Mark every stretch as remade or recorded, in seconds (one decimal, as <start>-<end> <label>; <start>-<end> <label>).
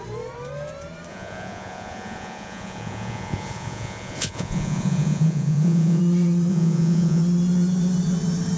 0.0-1.1 recorded; 1.1-6.0 remade; 6.0-6.5 recorded; 6.5-7.2 remade; 7.2-8.6 recorded